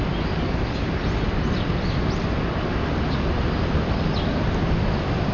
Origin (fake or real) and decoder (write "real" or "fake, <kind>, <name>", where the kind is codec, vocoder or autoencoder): real